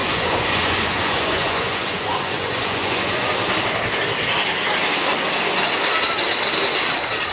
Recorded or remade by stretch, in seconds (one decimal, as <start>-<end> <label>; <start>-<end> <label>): 0.0-3.3 remade; 3.3-7.3 recorded